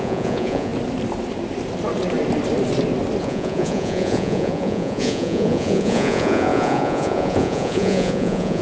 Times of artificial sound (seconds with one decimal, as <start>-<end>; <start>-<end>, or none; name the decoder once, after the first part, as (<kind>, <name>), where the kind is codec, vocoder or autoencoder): 0.0-0.7 (vocoder, Vocos); 3.2-8.6